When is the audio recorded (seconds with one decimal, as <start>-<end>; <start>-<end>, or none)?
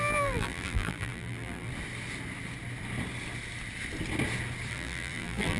1.7-4.7